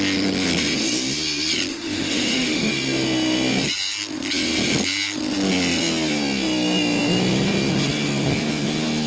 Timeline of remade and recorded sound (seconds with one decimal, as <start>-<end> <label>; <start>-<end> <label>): 0.0-1.7 recorded; 1.7-2.7 remade; 2.7-9.1 recorded